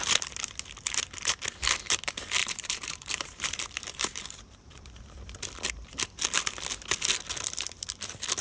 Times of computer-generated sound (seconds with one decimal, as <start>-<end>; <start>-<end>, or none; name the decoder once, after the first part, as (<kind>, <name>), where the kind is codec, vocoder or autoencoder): 2.4-5.0 (vocoder, BigVGAN v2)

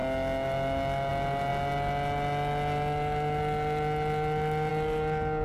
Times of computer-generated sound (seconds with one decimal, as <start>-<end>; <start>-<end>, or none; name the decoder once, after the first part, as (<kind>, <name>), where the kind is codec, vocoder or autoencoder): none